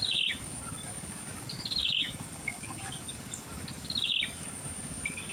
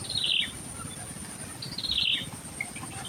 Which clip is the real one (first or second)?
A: second